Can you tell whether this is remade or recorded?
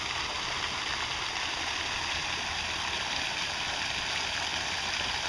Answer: recorded